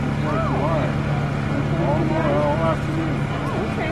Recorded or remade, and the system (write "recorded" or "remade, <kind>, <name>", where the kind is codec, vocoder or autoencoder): recorded